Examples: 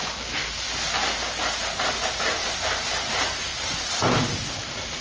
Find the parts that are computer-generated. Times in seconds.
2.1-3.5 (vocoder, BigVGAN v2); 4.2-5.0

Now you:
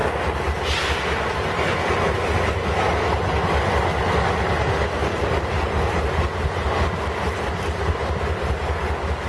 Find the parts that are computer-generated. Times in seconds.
5.0-8.6 (vocoder, BigVGAN v2)

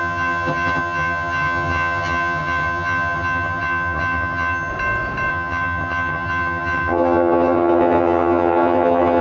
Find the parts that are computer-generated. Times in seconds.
0.0-4.7 (vocoder, HiFi-GAN); 5.3-9.2

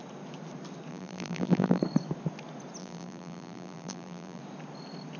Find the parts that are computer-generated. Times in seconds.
0.9-1.8 (vocoder, BigVGAN v2); 2.8-4.4

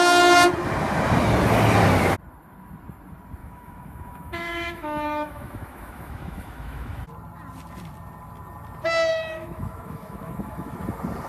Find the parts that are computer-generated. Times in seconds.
3.4-7.0 (autoencoder, DAC-VAE); 9.1-10.8

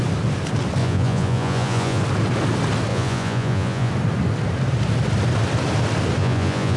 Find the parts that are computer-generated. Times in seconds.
0.8-2.0 (vocoder, Vocos); 2.9-3.9; 6.2-6.8

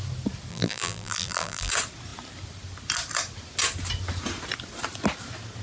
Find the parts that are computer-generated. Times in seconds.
0.5-1.7 (vocoder, BigVGAN v2)